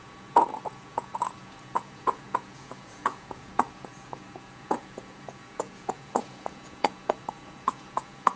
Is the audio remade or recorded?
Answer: remade